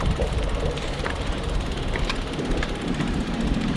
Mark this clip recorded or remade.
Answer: remade